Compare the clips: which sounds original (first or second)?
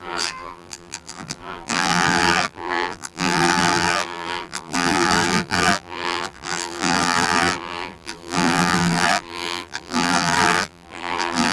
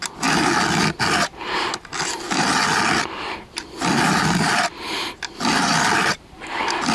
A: second